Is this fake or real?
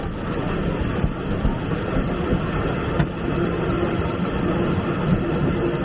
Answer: real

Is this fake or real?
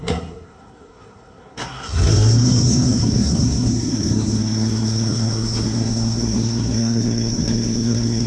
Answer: fake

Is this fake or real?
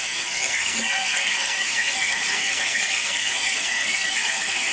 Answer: fake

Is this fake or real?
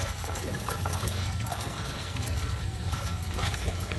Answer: fake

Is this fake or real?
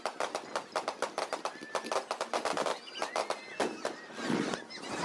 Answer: real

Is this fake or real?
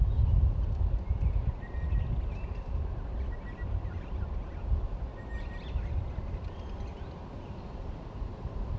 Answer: real